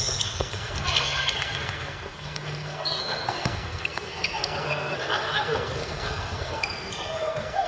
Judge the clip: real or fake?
fake